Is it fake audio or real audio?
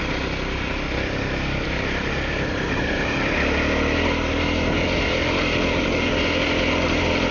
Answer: real